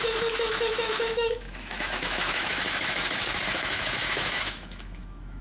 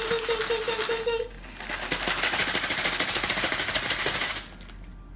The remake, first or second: first